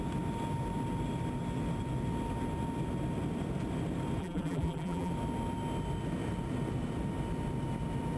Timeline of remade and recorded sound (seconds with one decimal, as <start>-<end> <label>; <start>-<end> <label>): 0.0-4.2 recorded; 4.2-5.1 remade; 5.1-8.2 recorded